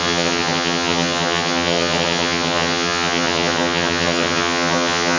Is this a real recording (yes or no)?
no